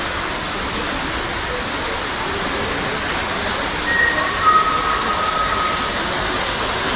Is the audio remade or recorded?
recorded